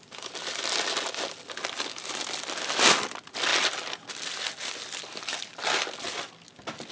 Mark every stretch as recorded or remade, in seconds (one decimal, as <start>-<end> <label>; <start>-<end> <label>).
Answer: 0.0-6.9 recorded